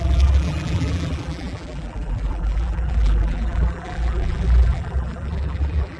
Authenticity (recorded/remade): remade